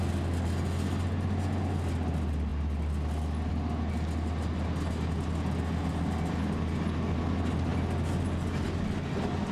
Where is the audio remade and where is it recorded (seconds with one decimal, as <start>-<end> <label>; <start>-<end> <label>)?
0.0-9.5 recorded